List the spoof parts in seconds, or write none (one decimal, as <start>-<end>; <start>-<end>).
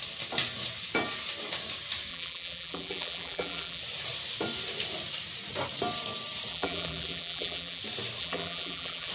2.1-3.8; 6.5-7.8; 8.2-9.1